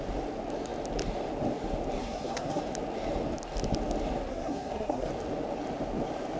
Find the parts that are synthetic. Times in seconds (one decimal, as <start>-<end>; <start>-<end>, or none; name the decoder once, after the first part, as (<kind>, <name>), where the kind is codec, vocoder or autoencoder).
2.0-2.6 (codec, SNAC); 4.3-5.1